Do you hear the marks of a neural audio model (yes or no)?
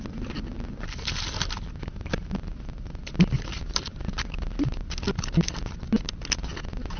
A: no